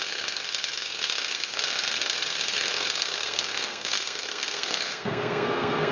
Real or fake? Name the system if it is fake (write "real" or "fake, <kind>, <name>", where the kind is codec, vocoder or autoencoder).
fake, codec, SNAC